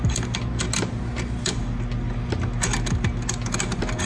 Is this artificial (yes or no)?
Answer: no